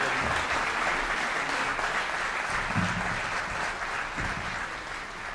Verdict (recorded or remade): recorded